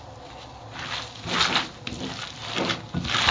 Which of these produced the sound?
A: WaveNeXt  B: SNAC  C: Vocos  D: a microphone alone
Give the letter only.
D